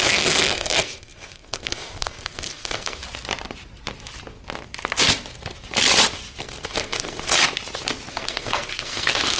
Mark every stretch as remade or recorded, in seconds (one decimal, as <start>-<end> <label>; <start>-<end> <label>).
0.0-3.0 remade; 3.0-6.4 recorded; 6.4-7.4 remade; 7.4-8.1 recorded; 8.1-9.4 remade